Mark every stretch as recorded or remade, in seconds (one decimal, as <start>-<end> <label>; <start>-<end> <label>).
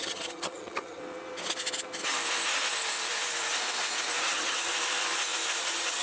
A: 0.0-1.0 remade; 1.0-4.2 recorded; 4.2-4.7 remade; 4.7-5.6 recorded; 5.6-6.0 remade